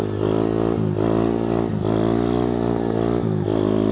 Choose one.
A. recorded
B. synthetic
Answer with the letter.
A